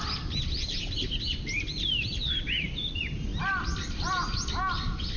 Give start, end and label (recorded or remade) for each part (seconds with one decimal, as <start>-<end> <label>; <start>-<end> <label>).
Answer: 0.0-5.2 recorded